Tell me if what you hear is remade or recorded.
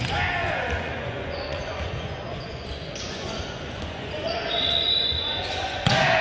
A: remade